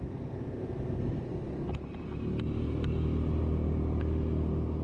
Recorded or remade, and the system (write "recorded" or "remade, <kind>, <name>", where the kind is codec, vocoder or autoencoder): recorded